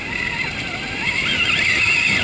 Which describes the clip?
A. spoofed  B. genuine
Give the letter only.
B